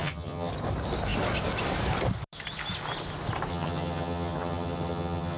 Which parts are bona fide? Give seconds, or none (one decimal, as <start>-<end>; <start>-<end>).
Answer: 0.5-3.5